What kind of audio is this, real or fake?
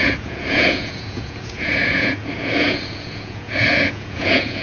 fake